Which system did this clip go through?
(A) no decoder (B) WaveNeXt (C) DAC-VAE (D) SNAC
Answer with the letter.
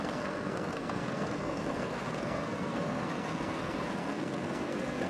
D